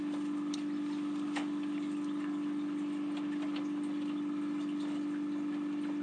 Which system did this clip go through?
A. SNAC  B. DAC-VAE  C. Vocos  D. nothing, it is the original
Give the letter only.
D